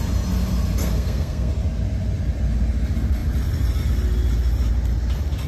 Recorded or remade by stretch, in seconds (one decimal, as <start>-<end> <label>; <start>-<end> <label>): 0.0-0.8 recorded; 0.8-1.5 remade; 1.5-5.5 recorded